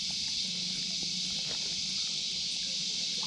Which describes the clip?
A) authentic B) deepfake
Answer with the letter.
B